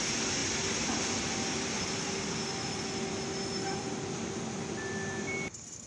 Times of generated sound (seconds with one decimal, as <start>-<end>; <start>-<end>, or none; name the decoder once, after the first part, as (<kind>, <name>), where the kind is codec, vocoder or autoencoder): none